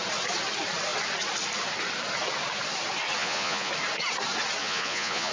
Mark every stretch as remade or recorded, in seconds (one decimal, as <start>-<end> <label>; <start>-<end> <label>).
0.0-3.2 recorded; 3.2-3.7 remade; 3.7-4.6 recorded; 4.6-5.3 remade